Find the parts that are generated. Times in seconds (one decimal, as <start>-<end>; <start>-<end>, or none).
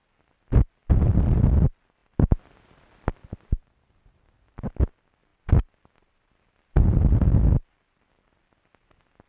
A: 0.0-1.3; 5.3-8.4